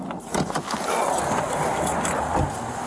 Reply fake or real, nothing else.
real